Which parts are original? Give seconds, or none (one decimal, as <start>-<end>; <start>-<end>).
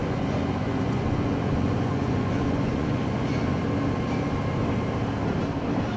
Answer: 3.6-6.0